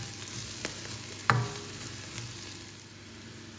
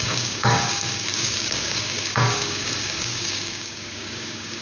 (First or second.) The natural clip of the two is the first